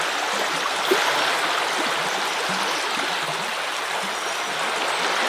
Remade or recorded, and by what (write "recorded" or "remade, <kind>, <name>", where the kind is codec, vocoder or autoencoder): recorded